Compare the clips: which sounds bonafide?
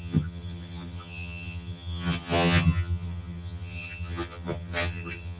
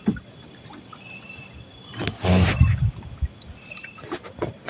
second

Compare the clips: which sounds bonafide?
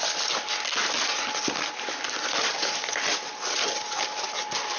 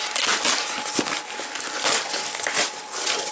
second